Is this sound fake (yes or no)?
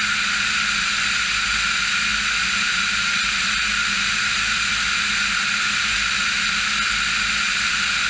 no